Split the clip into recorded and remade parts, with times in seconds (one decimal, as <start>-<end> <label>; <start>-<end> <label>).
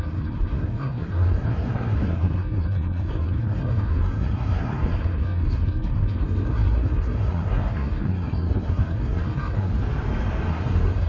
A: 0.0-9.7 remade; 9.7-10.5 recorded; 10.5-11.1 remade